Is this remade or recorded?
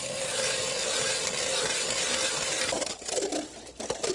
recorded